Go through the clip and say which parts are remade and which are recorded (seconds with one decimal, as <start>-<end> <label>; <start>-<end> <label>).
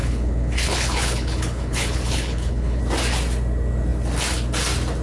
0.0-2.8 remade; 2.8-5.0 recorded